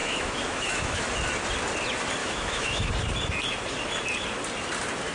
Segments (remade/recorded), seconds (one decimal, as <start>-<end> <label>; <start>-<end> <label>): 0.0-1.0 remade; 1.0-2.2 recorded; 2.2-2.9 remade; 2.9-5.1 recorded